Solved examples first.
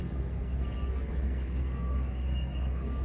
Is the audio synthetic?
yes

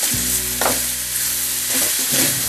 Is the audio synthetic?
no